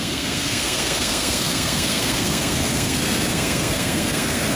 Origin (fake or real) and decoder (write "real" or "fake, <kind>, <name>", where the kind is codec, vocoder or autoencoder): fake, codec, SNAC